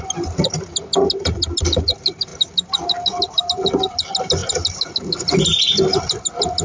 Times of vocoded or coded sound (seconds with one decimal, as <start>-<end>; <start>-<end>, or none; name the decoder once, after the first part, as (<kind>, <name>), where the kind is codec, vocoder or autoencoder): none